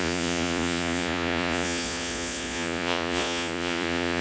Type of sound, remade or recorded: remade